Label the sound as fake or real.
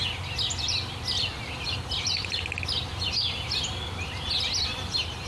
real